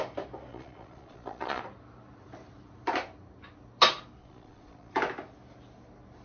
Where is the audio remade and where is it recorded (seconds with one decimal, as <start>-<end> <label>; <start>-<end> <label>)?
0.0-0.5 recorded; 0.5-1.6 remade; 1.6-4.2 recorded; 4.2-4.9 remade; 4.9-6.2 recorded